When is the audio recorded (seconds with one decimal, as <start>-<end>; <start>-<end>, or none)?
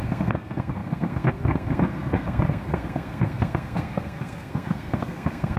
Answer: none